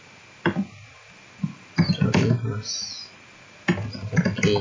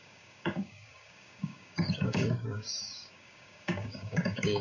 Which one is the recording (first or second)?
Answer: first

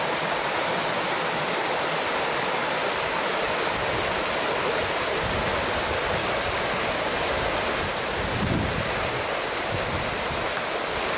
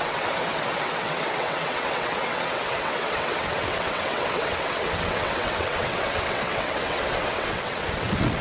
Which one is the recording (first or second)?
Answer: first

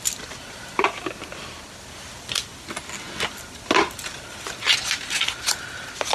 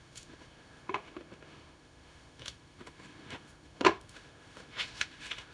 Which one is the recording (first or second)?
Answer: first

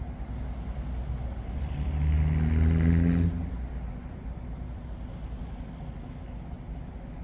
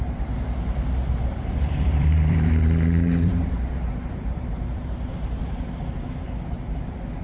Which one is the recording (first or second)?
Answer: first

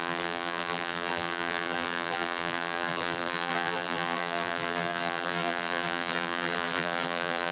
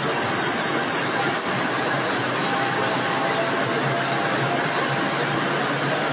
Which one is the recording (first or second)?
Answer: second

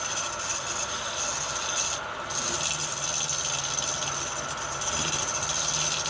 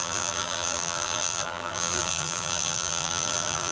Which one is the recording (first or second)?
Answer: first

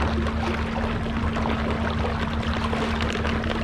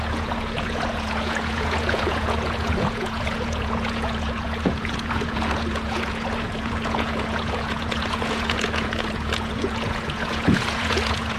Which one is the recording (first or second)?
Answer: first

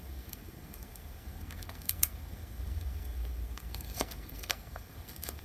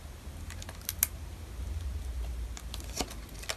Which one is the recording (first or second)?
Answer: second